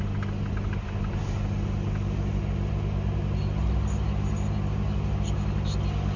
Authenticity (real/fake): real